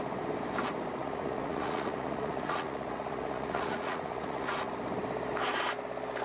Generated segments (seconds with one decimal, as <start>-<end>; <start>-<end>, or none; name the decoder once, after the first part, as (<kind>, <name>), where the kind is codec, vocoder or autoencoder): 1.0-4.7 (vocoder, Vocos)